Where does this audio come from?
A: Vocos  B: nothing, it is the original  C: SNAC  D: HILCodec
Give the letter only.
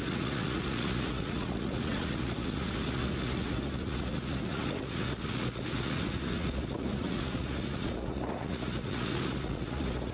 A